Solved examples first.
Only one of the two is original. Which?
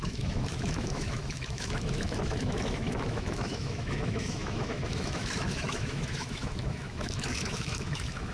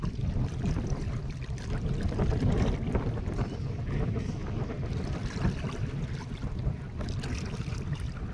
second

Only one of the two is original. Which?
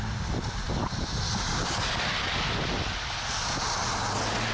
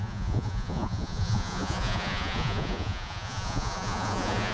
first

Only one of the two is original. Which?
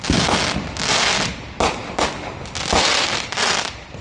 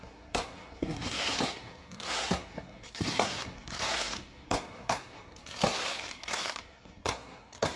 first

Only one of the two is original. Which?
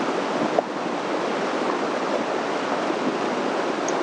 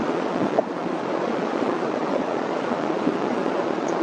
first